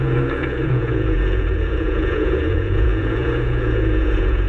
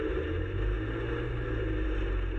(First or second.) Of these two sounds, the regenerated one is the first